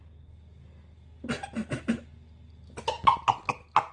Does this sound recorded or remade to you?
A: recorded